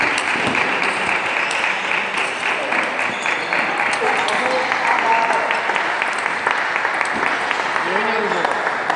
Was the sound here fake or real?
real